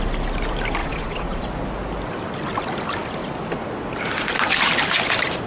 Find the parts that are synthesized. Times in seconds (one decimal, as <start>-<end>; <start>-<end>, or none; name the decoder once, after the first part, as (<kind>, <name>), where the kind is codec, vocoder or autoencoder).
0.8-1.4 (vocoder, Vocos)